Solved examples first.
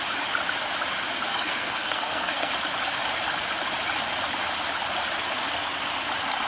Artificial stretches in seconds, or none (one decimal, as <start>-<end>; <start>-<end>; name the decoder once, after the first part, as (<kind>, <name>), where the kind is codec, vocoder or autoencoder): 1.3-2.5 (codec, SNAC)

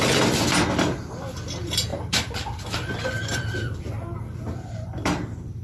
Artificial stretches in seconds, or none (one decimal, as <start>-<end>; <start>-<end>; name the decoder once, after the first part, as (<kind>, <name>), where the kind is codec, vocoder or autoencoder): 1.9-5.6 (vocoder, BigVGAN v2)

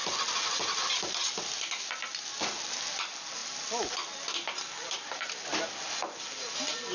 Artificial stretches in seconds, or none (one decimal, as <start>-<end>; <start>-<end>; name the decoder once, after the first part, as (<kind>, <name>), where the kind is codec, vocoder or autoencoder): 0.0-1.8 (vocoder, BigVGAN v2)